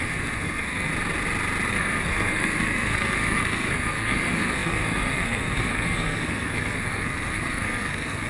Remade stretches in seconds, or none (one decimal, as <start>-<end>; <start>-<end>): 0.0-0.9; 1.7-8.3